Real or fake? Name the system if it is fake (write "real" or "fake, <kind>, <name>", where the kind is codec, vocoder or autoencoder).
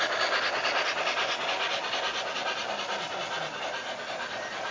real